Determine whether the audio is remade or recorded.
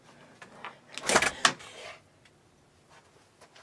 recorded